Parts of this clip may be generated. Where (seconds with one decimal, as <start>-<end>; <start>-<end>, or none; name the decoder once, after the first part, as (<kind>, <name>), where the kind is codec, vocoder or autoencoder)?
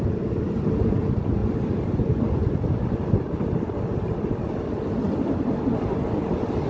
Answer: none